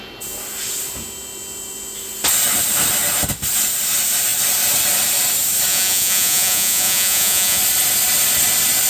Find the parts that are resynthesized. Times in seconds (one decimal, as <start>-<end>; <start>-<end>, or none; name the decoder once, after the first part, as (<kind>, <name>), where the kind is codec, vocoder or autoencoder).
5.7-7.6 (vocoder, Vocos)